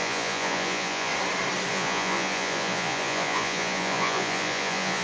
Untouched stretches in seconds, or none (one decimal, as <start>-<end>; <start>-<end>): 1.1-1.7